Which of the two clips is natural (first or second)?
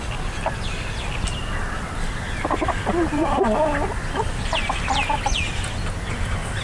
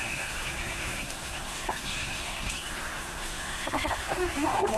first